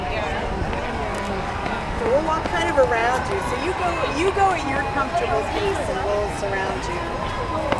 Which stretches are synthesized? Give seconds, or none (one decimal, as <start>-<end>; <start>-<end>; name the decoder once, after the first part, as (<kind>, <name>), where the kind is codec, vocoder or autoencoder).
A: 1.1-2.0 (codec, DAC)